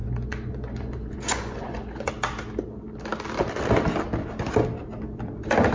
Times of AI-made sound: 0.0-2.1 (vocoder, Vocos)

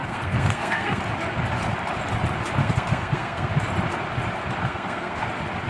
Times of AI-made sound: 0.0-1.0 (codec, SNAC); 2.6-3.5; 4.6-5.2

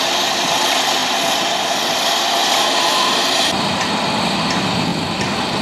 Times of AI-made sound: 1.0-4.4 (vocoder, BigVGAN v2)

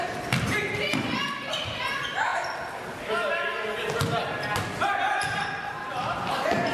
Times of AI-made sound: none

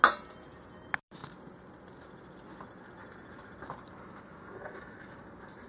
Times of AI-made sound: none

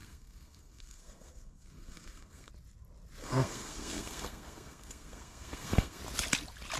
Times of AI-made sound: 0.0-2.5 (codec, SNAC); 3.2-6.0

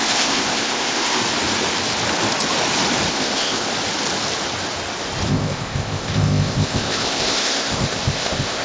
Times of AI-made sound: 0.0-1.2 (codec, ZipCodec); 3.1-3.7; 5.3-8.6

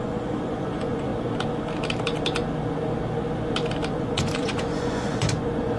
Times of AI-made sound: 0.0-1.1 (vocoder, Vocos); 3.9-5.8